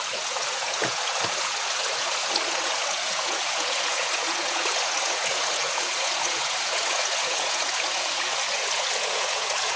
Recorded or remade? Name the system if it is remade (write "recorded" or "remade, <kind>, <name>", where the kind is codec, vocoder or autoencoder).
remade, vocoder, Vocos